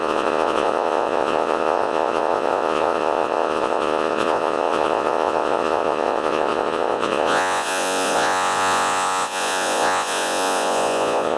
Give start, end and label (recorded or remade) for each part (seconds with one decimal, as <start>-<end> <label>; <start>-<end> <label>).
0.0-11.4 remade